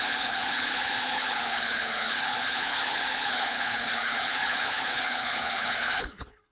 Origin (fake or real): fake